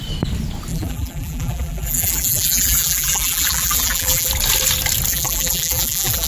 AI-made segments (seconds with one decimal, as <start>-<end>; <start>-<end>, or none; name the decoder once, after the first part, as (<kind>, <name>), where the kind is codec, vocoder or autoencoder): 0.7-4.3 (vocoder, BigVGAN v2); 5.1-6.3